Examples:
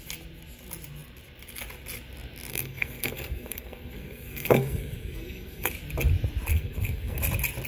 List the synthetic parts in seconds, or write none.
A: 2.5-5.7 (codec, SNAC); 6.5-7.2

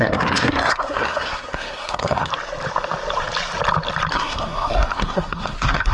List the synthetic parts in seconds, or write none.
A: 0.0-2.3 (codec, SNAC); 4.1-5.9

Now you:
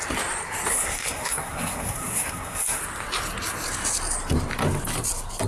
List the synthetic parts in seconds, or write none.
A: 0.7-2.8 (codec, SNAC)

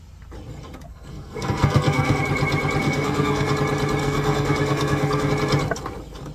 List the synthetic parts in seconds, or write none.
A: 0.9-2.2 (codec, SNAC); 2.8-3.5; 4.0-5.3

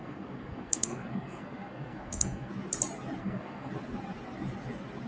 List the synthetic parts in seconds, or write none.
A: 0.0-2.5 (codec, SNAC); 3.2-3.7

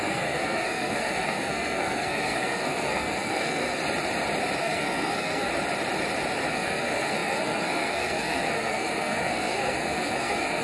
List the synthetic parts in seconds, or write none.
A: 0.0-3.8 (codec, SNAC); 4.6-5.5; 6.5-10.6